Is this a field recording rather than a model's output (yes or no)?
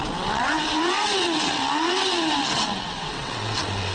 no